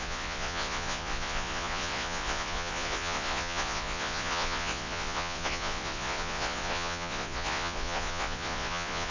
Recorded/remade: remade